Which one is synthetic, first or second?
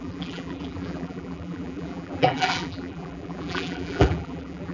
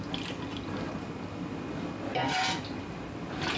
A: first